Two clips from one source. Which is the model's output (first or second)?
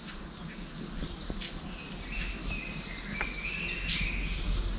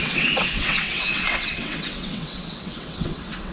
second